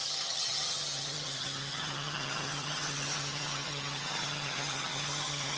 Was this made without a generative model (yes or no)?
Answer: no